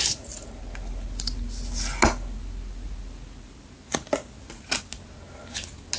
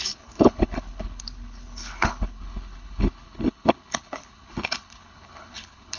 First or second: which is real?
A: first